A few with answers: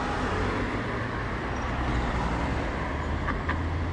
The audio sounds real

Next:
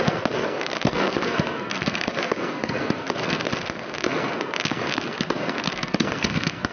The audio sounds fake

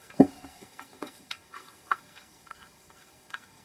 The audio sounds fake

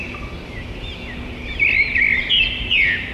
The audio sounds real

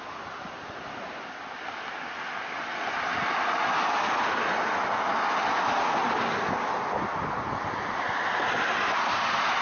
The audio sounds real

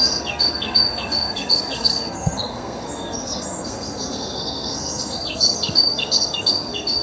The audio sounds fake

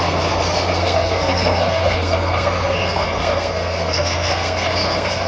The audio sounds fake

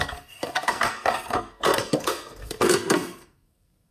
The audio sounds fake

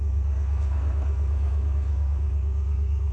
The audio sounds fake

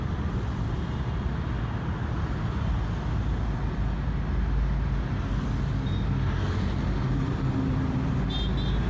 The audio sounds real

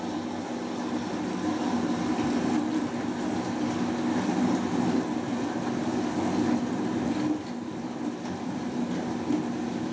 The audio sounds real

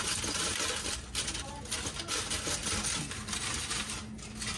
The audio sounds real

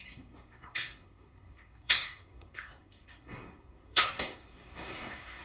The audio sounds fake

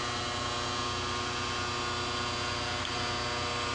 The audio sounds real